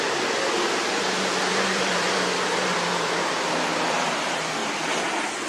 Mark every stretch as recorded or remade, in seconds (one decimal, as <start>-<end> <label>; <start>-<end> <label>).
0.0-4.6 remade; 4.6-5.5 recorded